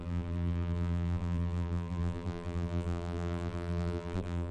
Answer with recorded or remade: remade